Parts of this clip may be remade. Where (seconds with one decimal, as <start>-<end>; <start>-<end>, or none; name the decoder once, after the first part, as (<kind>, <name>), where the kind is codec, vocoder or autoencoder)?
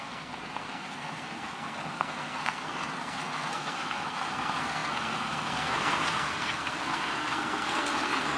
0.0-8.4 (codec, SNAC)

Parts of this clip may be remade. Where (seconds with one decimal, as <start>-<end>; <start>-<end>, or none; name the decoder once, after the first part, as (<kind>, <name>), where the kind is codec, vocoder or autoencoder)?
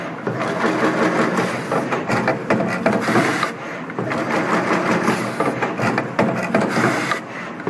none